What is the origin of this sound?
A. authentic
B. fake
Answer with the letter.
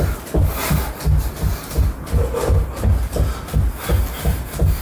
A